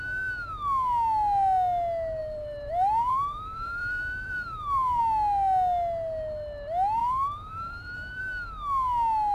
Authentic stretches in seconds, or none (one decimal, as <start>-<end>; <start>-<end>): 0.0-2.2; 5.0-7.0; 8.2-9.3